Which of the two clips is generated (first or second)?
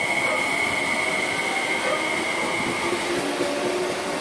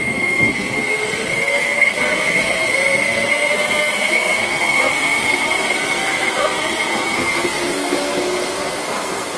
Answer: second